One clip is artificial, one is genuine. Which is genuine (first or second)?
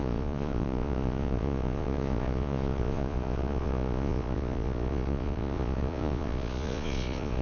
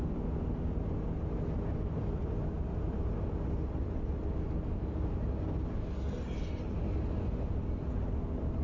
second